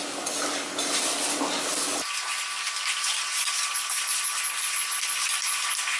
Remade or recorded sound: recorded